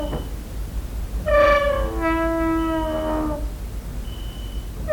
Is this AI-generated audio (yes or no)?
no